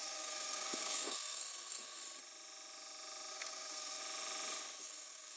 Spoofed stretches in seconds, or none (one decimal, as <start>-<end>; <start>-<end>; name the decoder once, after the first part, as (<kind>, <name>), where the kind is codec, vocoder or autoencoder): 0.0-2.0 (codec, SNAC); 3.3-4.0; 4.8-5.4